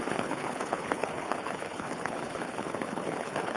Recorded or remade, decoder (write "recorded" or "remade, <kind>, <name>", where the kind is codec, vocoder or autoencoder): remade, codec, HILCodec